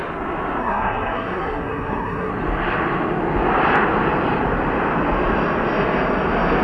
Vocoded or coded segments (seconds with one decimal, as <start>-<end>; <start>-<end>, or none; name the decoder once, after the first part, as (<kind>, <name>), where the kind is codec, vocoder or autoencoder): 0.6-2.3 (codec, SNAC)